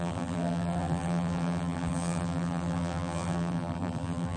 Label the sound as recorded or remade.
remade